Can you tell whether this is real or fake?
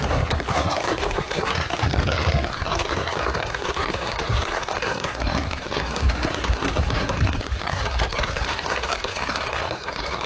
fake